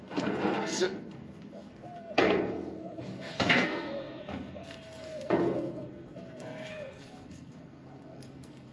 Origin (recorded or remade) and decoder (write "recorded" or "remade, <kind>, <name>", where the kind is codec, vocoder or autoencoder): remade, codec, SNAC